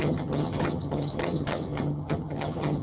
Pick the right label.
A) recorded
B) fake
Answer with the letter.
B